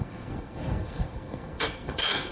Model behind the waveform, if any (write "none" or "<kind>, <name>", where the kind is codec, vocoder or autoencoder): codec, SNAC